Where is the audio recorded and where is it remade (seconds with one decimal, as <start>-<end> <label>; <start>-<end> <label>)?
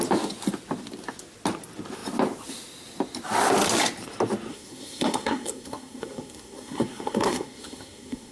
0.0-4.5 recorded; 4.5-8.3 remade